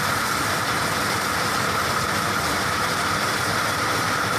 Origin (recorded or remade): remade